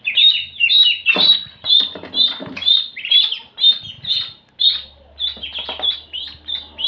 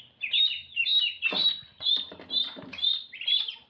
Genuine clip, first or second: first